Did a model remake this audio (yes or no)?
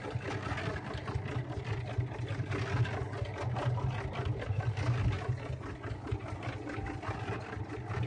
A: no